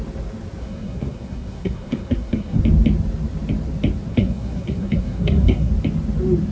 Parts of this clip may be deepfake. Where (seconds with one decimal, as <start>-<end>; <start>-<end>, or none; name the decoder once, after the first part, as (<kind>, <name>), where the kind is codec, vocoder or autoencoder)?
0.6-2.6 (codec, SNAC); 4.1-5.7

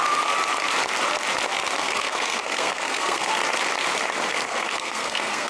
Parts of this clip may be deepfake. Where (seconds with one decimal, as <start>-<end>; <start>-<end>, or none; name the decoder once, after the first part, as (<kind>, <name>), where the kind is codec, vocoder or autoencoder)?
1.8-3.3 (codec, SNAC); 4.3-5.5

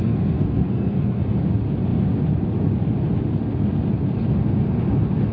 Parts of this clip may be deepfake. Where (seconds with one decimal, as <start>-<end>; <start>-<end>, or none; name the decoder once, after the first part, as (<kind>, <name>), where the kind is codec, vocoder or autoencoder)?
0.0-1.2 (codec, SNAC)

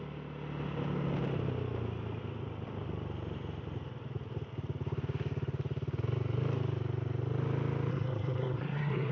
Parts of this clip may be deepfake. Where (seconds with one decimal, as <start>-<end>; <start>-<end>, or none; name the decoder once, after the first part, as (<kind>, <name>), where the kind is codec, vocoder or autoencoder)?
7.9-9.1 (codec, SNAC)

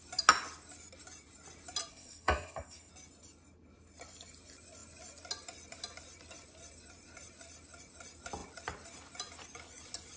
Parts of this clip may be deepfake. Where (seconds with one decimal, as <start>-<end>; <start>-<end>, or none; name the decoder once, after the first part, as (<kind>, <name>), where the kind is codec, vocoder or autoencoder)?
1.9-2.9 (codec, SNAC)

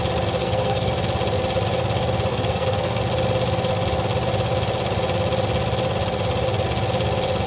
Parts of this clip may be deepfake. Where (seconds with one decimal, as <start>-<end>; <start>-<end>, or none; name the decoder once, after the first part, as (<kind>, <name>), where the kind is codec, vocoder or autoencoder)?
0.4-0.9 (codec, SNAC); 2.3-3.0